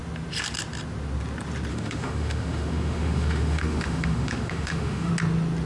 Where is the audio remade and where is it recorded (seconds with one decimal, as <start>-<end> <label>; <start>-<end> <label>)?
0.0-1.7 recorded; 1.7-5.1 remade; 5.1-5.7 recorded